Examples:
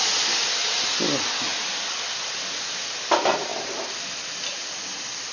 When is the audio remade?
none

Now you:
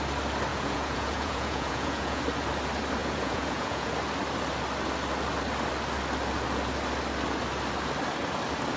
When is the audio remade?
0.5-2.2 (vocoder, Vocos); 3.0-3.9